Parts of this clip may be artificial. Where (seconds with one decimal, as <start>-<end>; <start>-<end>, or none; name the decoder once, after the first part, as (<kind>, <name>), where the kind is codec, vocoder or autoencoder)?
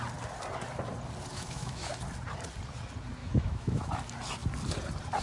1.3-1.9 (autoencoder, DAC-VAE); 3.2-3.9